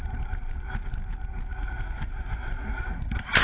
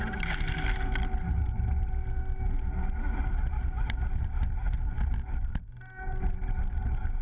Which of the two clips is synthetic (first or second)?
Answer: first